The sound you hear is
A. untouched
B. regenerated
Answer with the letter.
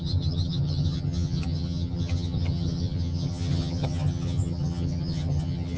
B